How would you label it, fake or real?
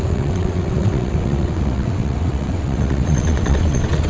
fake